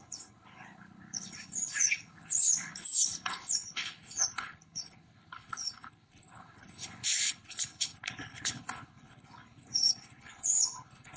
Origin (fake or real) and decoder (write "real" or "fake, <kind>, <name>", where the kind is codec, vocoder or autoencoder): fake, codec, HILCodec